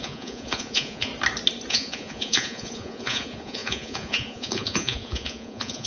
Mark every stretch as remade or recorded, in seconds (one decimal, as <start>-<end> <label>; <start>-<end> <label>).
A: 0.0-1.1 remade; 1.1-1.7 recorded; 1.7-5.9 remade